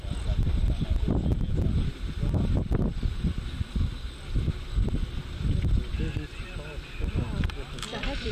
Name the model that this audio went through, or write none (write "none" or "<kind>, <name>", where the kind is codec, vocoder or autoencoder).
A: none